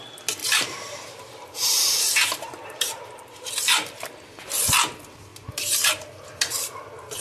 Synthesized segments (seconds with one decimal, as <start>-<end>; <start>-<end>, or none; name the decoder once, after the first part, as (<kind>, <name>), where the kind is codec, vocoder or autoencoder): 0.4-4.3 (vocoder, BigVGAN v2); 5.3-5.9